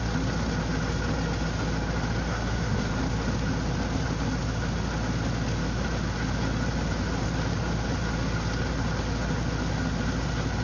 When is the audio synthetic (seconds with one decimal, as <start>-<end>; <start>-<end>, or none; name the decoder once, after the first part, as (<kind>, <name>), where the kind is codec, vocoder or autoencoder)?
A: 2.3-2.9 (codec, SNAC)